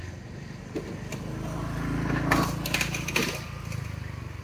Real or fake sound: real